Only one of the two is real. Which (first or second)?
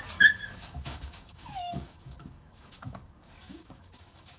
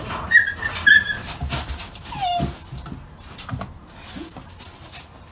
second